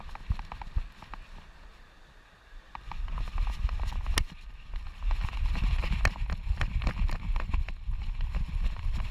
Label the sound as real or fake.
real